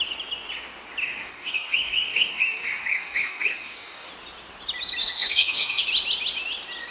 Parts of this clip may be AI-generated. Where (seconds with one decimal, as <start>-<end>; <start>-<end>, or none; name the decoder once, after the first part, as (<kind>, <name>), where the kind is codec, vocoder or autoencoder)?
1.0-4.1 (codec, DAC); 5.0-5.8